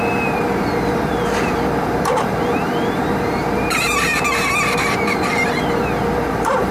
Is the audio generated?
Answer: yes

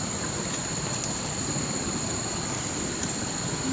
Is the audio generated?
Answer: no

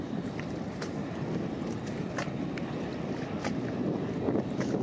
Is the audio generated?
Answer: no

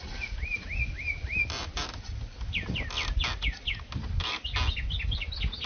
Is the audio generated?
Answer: no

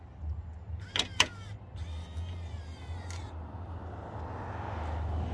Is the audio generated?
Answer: no